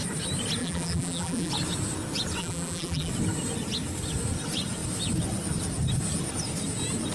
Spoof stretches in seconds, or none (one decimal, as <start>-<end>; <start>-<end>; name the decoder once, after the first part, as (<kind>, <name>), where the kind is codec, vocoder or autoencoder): 0.6-1.5 (vocoder, BigVGAN v2); 2.4-3.1